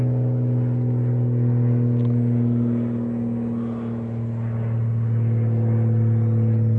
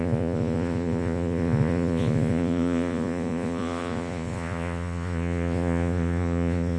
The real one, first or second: first